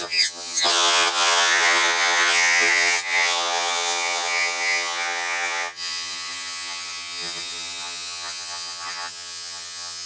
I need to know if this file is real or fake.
fake